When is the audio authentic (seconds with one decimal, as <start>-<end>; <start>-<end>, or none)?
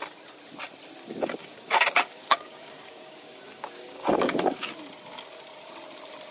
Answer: 0.0-1.4; 4.7-6.3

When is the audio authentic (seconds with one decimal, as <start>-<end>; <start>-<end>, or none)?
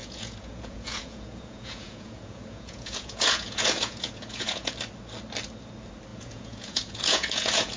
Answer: 4.7-6.1